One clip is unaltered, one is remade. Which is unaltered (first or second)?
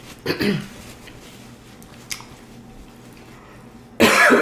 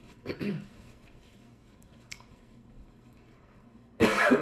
first